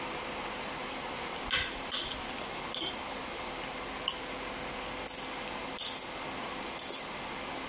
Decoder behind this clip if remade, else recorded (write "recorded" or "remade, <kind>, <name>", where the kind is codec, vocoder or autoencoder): recorded